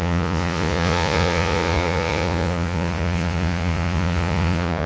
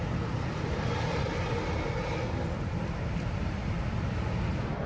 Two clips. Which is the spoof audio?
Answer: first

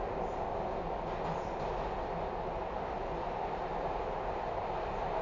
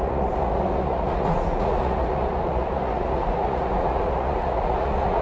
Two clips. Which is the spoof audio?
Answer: second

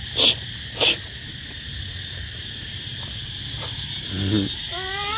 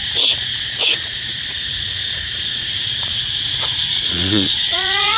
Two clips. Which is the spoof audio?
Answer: second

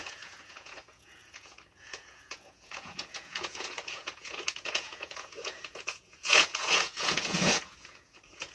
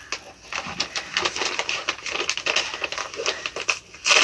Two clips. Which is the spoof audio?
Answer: first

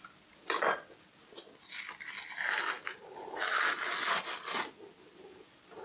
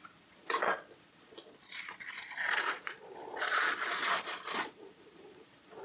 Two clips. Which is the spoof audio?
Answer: second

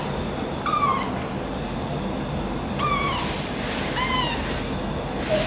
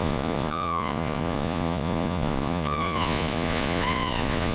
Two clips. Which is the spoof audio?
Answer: second